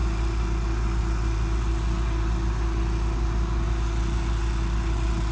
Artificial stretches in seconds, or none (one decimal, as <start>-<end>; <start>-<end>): none